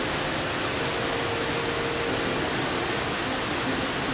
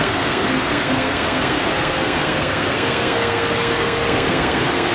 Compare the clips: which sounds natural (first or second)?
first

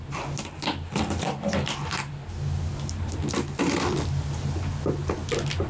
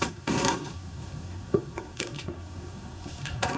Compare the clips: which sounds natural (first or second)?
first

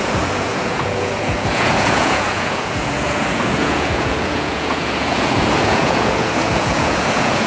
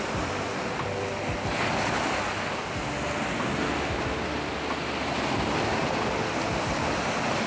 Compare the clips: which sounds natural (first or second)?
second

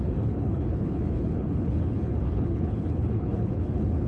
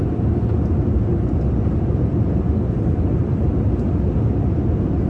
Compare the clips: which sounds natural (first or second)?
second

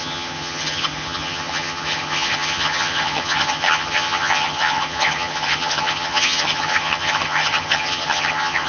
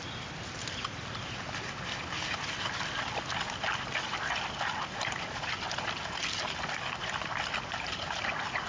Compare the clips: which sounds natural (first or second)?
second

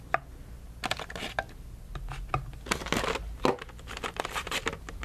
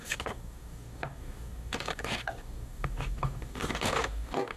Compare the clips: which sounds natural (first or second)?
first